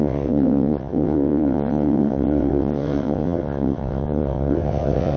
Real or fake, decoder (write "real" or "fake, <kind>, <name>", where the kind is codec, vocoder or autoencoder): fake, vocoder, WaveNeXt